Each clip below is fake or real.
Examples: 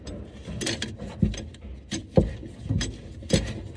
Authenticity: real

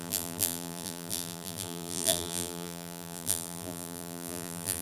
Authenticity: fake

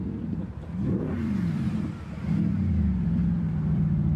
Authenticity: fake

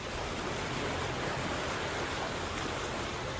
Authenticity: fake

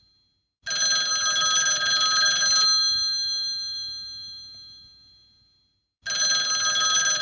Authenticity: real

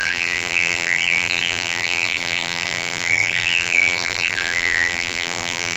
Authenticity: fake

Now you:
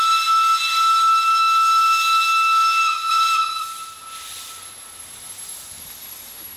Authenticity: real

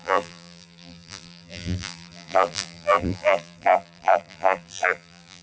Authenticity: fake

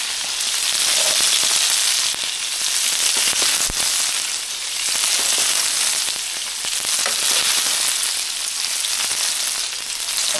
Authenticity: real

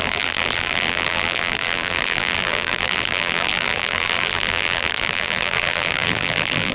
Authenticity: fake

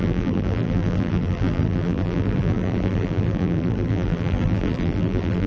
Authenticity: fake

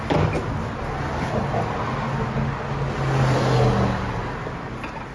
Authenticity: real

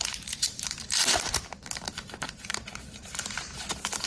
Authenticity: fake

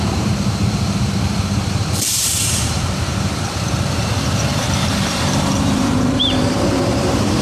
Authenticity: fake